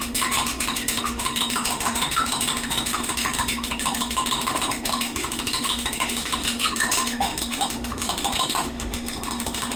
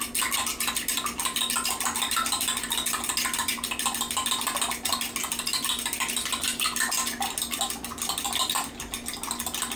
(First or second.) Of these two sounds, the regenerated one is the first